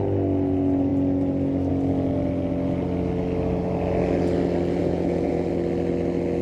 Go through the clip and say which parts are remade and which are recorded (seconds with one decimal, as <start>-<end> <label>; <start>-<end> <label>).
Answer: 0.0-4.8 recorded; 4.8-5.5 remade; 5.5-6.4 recorded